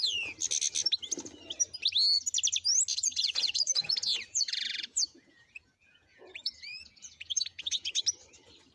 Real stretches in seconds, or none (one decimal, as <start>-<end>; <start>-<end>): 0.0-2.9; 8.0-8.7